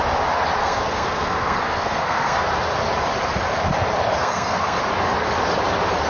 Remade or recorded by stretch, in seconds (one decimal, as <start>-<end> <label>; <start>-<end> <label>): 0.0-0.6 recorded; 0.6-2.5 remade; 2.5-4.2 recorded; 4.2-4.8 remade; 4.8-6.1 recorded